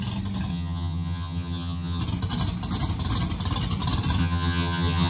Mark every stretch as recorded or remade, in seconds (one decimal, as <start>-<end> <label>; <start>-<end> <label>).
0.0-0.5 recorded; 0.5-2.0 remade; 2.0-4.2 recorded; 4.2-5.1 remade